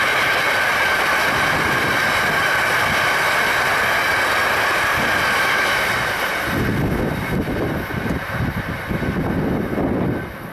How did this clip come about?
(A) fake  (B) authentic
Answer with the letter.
B